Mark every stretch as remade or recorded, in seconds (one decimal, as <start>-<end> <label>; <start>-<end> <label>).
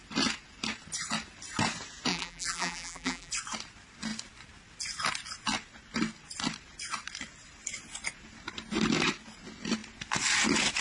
0.0-2.1 recorded; 2.1-3.3 remade; 3.3-10.8 recorded